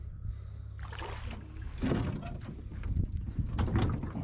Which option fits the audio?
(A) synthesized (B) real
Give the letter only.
B